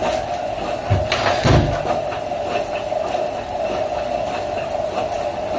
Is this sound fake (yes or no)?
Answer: no